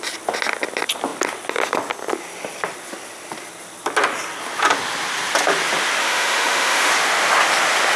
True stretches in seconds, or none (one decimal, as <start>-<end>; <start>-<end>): 0.0-6.0; 6.9-8.0